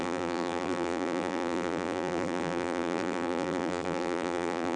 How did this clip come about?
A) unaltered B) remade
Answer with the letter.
B